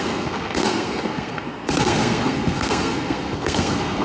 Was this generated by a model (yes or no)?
yes